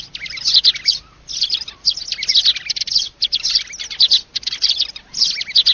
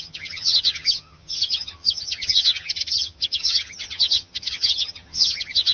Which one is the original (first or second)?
first